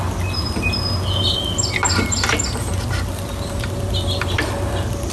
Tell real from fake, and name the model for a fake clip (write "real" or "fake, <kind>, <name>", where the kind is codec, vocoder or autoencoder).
real